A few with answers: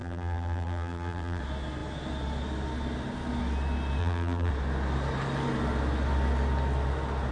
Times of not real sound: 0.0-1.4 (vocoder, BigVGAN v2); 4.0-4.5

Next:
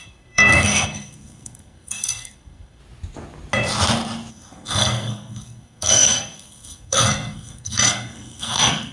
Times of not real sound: 0.0-2.8 (codec, SNAC); 4.3-8.9

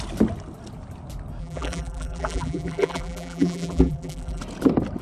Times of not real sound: 1.4-4.4 (vocoder, BigVGAN v2)

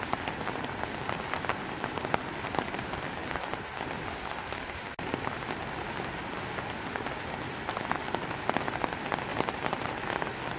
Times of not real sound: 9.3-10.1 (vocoder, BigVGAN v2)

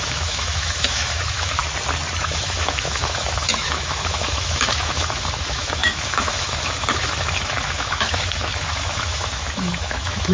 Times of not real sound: 0.0-1.6 (autoencoder, DAC-VAE); 2.2-10.3

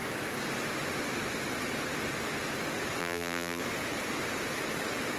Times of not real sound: 3.0-3.6 (vocoder, BigVGAN v2)

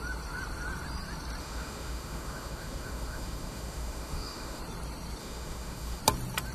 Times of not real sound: 1.4-4.6 (autoencoder, DAC-VAE); 5.2-6.0